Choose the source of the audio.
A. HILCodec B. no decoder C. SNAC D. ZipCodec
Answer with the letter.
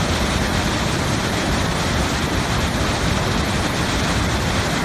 B